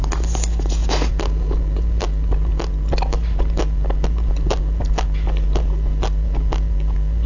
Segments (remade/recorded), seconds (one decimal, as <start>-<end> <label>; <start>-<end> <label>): 0.0-7.3 recorded